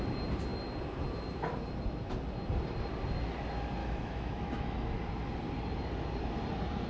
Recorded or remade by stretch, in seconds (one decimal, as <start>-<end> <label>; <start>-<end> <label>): 0.0-3.8 recorded; 3.8-4.9 remade; 4.9-6.9 recorded